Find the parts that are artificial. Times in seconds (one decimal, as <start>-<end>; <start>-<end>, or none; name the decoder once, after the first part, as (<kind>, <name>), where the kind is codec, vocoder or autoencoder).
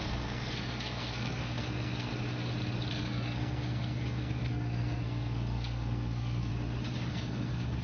0.0-2.1 (codec, SNAC); 2.9-6.5; 7.1-7.8